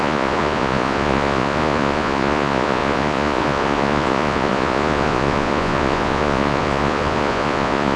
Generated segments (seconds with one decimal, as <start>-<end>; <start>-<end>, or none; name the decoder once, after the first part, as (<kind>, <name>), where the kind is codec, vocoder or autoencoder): 0.0-8.0 (vocoder, Vocos)